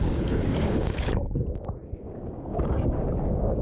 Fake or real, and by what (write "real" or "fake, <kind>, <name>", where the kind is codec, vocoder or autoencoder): fake, codec, DAC